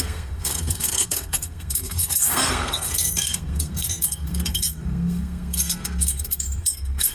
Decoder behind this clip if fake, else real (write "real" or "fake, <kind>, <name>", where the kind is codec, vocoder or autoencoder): fake, codec, SNAC